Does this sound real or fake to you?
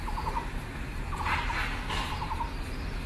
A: real